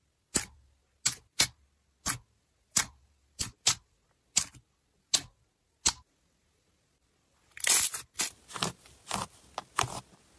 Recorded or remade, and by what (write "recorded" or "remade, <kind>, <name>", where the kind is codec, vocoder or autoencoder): recorded